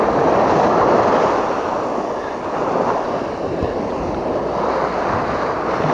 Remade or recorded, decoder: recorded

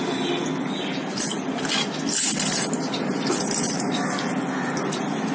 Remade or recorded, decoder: recorded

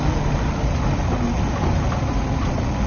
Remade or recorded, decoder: recorded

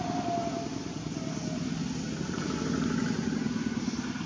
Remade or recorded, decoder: recorded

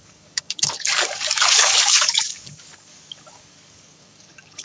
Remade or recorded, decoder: remade, codec, DAC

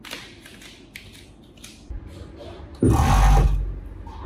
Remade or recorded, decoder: recorded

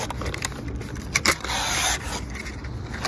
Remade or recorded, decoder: recorded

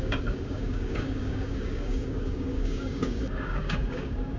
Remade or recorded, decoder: remade, codec, DAC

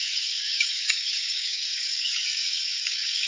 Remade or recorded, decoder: remade, codec, DAC